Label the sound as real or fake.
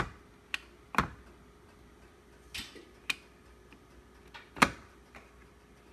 real